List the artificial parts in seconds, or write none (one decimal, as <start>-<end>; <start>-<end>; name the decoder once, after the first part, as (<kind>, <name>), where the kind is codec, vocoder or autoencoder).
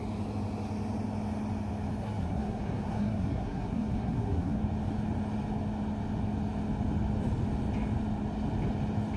2.0-4.6 (codec, SNAC)